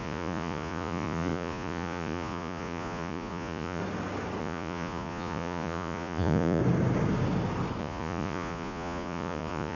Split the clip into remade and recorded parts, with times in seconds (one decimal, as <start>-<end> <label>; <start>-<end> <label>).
0.0-3.8 remade; 3.8-4.4 recorded; 4.4-6.6 remade; 6.6-7.8 recorded; 7.8-9.7 remade

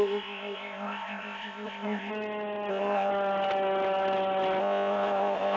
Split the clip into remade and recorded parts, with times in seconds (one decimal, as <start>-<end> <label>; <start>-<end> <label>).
0.0-2.1 remade; 2.1-2.7 recorded; 2.7-3.1 remade; 3.1-4.6 recorded; 4.6-5.6 remade

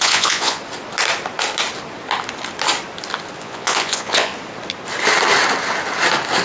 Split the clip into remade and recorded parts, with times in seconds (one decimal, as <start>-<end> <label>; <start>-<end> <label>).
0.0-0.6 remade; 0.6-3.4 recorded; 3.4-4.3 remade; 4.3-6.4 recorded